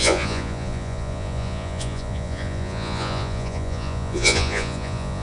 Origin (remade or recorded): remade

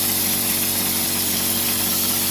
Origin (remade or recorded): remade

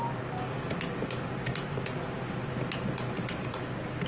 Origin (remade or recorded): recorded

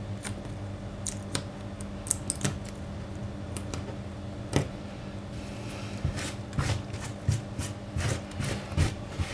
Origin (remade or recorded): recorded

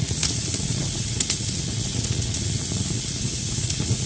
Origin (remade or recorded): remade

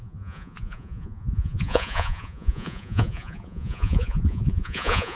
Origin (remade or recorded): remade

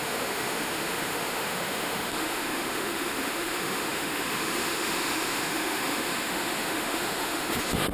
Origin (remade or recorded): remade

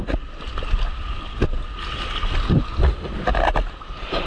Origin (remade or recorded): recorded